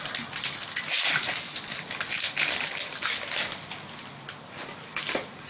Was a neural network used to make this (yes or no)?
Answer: no